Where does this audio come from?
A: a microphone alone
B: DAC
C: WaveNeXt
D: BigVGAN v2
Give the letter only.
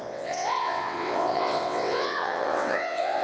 C